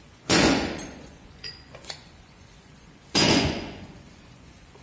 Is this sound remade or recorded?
remade